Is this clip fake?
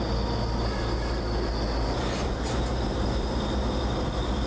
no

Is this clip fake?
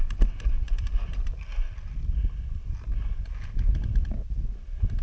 no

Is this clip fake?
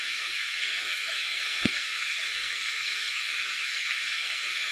yes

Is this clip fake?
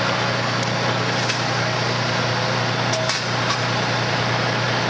no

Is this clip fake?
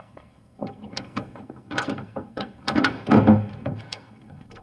yes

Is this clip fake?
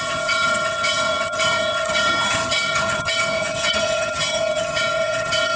yes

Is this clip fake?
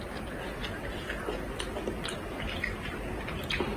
no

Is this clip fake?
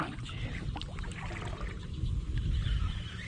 no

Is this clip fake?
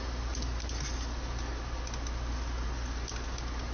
no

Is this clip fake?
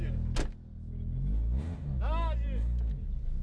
no